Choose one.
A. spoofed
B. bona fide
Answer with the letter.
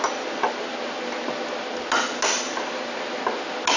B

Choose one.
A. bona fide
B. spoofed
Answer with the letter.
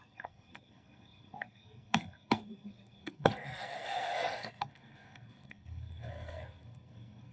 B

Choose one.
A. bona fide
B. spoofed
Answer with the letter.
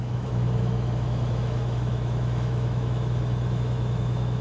B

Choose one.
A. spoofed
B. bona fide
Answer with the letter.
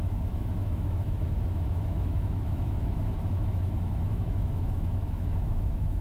A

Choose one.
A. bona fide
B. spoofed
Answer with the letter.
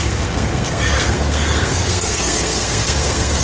B